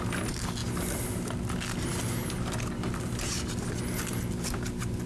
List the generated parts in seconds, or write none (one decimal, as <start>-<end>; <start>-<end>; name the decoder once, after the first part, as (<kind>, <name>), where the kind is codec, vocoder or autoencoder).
none